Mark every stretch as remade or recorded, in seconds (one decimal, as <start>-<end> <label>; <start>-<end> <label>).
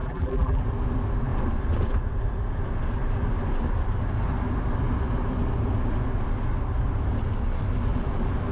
0.0-0.6 remade; 0.6-8.5 recorded